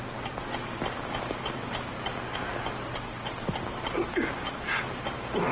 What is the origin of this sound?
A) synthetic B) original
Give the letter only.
B